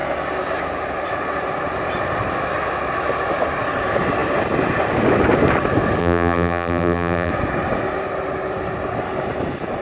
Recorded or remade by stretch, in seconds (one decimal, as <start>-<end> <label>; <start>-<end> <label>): 0.0-6.0 recorded; 6.0-7.3 remade; 7.3-9.8 recorded